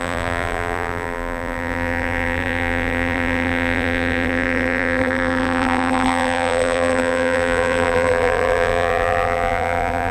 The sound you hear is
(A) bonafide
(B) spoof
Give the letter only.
B